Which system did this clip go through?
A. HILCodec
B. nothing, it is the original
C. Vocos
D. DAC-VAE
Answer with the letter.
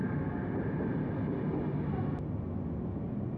B